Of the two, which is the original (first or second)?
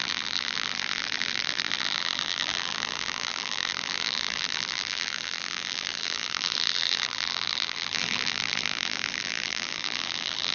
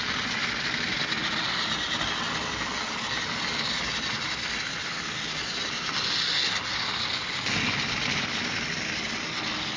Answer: second